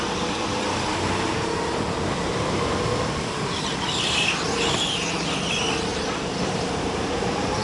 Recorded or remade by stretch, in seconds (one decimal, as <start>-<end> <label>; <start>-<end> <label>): 0.0-5.9 recorded; 5.9-7.6 remade